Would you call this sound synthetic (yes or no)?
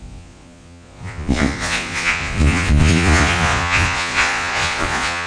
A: yes